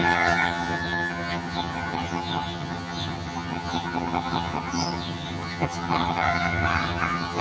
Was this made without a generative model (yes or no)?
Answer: no